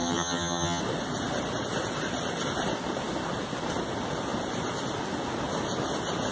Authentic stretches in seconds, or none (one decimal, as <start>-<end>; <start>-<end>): 0.8-6.3